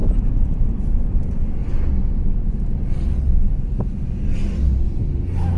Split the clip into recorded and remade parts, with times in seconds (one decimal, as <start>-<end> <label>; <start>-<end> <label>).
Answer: 0.0-5.6 recorded